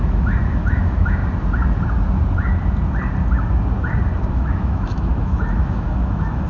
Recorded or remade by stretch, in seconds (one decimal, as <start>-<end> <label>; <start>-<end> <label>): 0.0-1.2 remade; 1.2-4.3 recorded; 4.3-6.5 remade